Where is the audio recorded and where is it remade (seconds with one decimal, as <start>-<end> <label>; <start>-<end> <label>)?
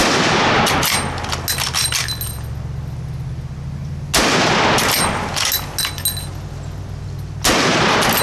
0.0-8.2 recorded